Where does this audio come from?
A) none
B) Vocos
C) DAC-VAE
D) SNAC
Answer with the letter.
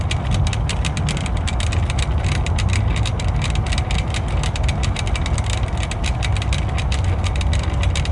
A